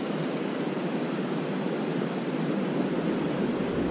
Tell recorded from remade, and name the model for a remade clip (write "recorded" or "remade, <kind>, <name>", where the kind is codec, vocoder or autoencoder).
recorded